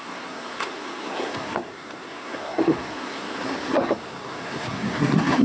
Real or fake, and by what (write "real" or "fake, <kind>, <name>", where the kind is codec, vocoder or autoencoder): fake, codec, SNAC